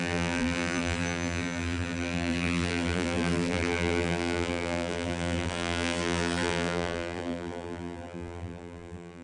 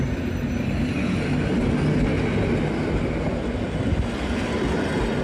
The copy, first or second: first